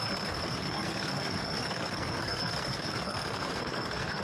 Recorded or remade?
remade